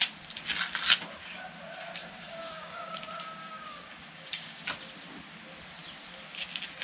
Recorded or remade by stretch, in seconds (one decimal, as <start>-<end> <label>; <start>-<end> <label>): 0.0-2.0 recorded; 2.0-3.0 remade; 3.0-3.4 recorded; 3.4-4.6 remade; 4.6-6.8 recorded